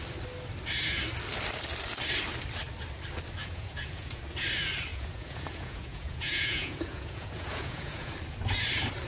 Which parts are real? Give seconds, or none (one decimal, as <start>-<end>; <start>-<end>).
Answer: 0.0-3.4; 4.2-4.9; 8.1-9.1